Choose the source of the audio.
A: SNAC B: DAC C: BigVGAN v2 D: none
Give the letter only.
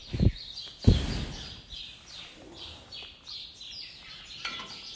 D